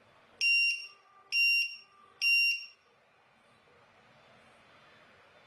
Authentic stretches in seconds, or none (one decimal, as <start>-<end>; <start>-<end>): 0.0-5.5